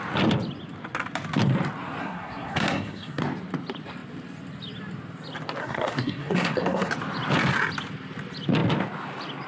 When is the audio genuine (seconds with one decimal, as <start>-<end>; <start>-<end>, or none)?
0.0-2.0; 3.2-5.6; 6.9-9.5